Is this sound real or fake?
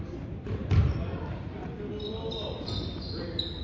real